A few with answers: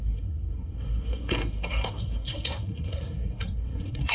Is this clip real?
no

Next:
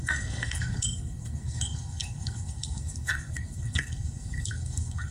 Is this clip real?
no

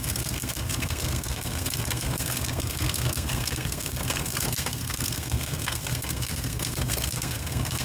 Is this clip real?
no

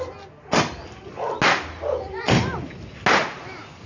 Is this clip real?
yes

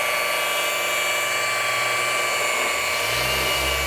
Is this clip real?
yes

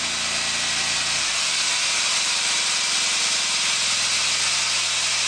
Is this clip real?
yes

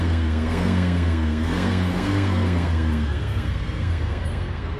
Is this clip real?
no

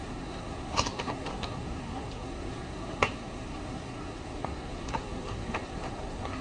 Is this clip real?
no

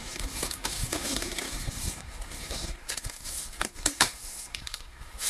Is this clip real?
no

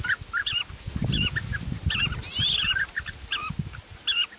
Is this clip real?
yes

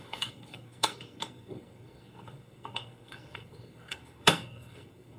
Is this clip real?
no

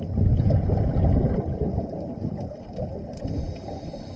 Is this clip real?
yes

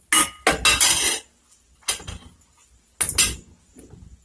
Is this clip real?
yes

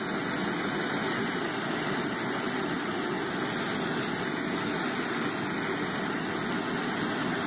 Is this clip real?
yes